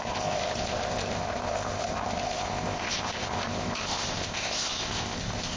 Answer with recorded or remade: remade